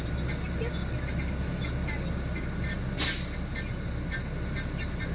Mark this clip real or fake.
real